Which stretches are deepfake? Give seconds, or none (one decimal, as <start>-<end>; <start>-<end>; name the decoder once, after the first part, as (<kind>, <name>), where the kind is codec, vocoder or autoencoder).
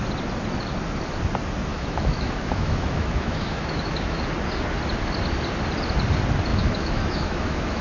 1.7-4.2 (autoencoder, DAC-VAE); 6.5-7.8